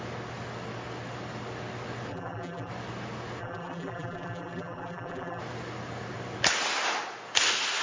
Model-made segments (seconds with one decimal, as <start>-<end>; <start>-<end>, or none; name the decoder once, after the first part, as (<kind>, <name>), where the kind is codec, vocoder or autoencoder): 2.1-2.7 (vocoder, BigVGAN v2); 3.4-5.4